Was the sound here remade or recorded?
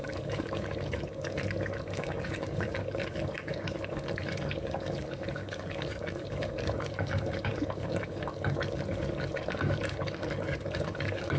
remade